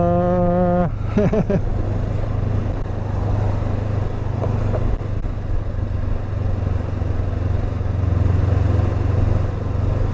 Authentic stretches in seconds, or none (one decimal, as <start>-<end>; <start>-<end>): 0.0-10.1